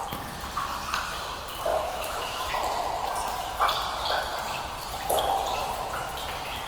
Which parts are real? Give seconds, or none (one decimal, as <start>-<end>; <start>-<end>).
0.0-1.7; 2.5-6.7

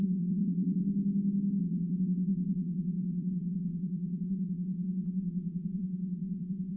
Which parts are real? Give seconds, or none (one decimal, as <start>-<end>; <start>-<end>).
0.8-1.6

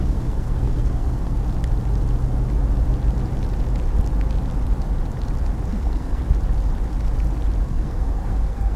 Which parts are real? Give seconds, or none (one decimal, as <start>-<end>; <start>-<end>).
1.4-5.7; 6.2-7.6

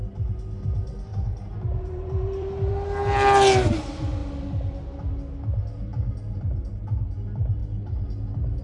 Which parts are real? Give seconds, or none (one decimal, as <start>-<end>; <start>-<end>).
0.0-1.1; 2.7-8.6